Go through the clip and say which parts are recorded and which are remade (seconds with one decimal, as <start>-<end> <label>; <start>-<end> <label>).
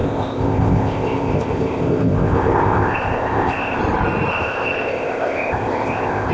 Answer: 0.0-3.8 remade; 3.8-4.3 recorded; 4.3-6.3 remade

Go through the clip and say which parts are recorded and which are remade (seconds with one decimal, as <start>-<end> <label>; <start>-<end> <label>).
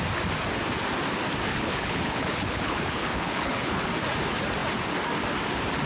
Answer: 0.0-1.5 recorded; 1.5-3.9 remade; 3.9-5.9 recorded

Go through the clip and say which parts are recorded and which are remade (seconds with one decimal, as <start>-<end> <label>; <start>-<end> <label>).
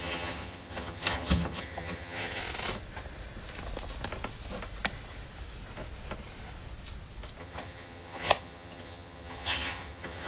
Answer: 0.0-2.4 remade; 2.4-7.4 recorded; 7.4-10.3 remade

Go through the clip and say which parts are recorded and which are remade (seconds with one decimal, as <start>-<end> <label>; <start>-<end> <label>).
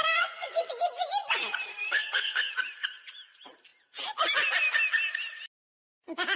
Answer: 0.0-0.7 remade; 0.7-1.7 recorded; 1.7-2.5 remade; 2.5-6.4 recorded